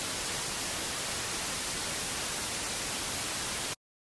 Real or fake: real